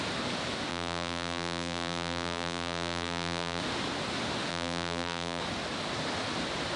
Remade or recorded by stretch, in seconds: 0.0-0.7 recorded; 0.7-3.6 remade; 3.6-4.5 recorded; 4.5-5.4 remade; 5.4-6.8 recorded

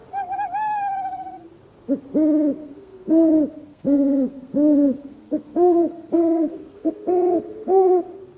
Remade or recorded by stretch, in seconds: 0.0-2.6 recorded; 2.6-3.3 remade; 3.3-3.7 recorded; 3.7-8.0 remade; 8.0-8.4 recorded

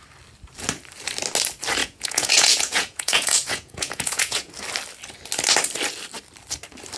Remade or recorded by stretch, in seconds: 0.0-1.8 recorded; 1.8-4.5 remade; 4.5-7.0 recorded

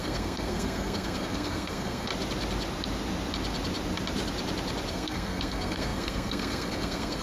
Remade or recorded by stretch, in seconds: 0.0-2.1 remade; 2.1-4.9 recorded; 4.9-7.2 remade

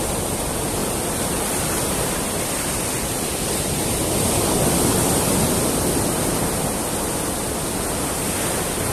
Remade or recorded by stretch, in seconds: 0.0-0.8 recorded; 0.8-5.6 remade; 5.6-8.9 recorded

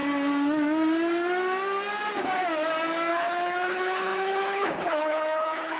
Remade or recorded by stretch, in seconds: 0.0-3.1 recorded; 3.1-5.8 remade